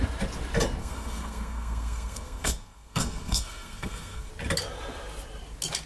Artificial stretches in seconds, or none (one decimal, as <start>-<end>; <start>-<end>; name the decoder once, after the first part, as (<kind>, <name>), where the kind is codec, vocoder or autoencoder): 0.8-4.3 (codec, SNAC)

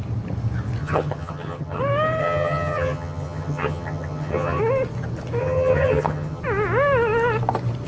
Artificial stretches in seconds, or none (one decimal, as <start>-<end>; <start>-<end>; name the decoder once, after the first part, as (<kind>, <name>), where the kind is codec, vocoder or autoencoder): 0.8-1.8 (vocoder, HiFi-GAN); 2.2-4.6; 5.4-6.4